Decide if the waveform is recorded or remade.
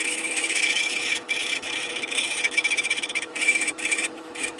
remade